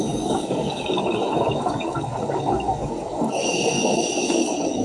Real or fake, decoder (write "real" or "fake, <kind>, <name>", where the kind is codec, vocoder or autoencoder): fake, codec, DAC